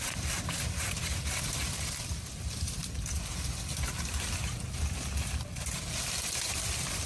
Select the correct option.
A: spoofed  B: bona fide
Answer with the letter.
A